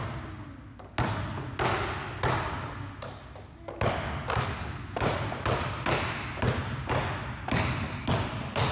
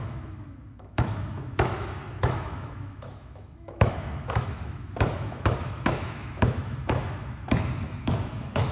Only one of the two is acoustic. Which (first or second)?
first